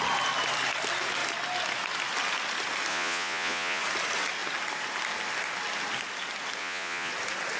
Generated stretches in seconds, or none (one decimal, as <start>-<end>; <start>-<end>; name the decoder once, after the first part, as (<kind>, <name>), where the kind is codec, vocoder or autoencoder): 2.9-3.8 (vocoder, Vocos); 6.6-7.1